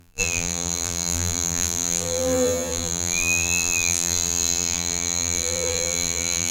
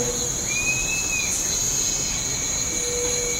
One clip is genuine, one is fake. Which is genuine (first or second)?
second